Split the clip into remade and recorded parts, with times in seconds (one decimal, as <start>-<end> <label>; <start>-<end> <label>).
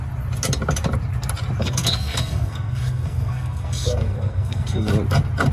0.0-1.6 recorded; 1.6-4.9 remade; 4.9-5.5 recorded